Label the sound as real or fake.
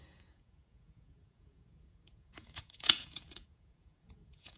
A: fake